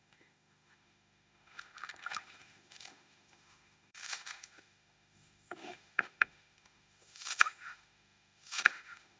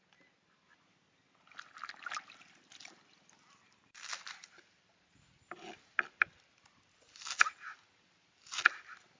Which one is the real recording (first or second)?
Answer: second